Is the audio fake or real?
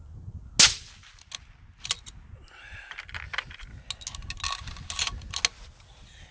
real